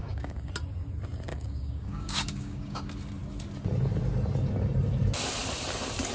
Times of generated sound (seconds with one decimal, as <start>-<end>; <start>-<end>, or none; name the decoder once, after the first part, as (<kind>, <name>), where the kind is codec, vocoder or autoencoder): 0.0-0.5 (codec, DAC); 1.3-2.8